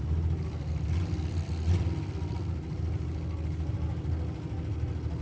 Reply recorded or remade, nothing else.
recorded